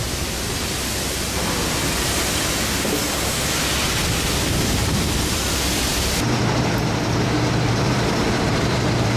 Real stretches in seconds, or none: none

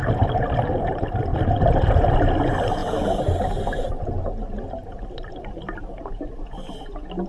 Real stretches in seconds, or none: 2.8-5.3; 6.3-7.3

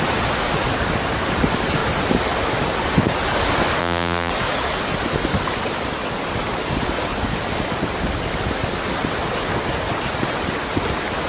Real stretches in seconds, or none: 0.0-3.8; 4.3-11.3

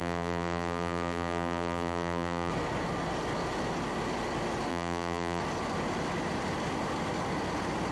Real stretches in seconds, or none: 2.5-4.7; 5.4-7.9